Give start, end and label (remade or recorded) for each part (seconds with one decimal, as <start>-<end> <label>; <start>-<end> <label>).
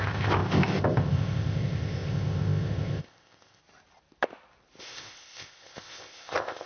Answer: 0.0-3.6 remade; 3.6-4.8 recorded; 4.8-6.7 remade